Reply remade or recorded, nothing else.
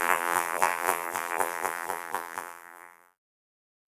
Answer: remade